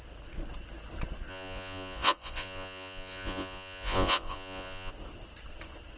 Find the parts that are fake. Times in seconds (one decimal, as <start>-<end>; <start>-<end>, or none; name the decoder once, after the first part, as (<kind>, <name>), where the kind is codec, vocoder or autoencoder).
1.3-4.9 (vocoder, Vocos)